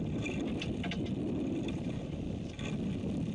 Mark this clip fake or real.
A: real